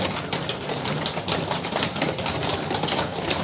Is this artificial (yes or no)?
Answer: no